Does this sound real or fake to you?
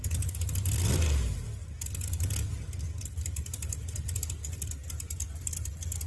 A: real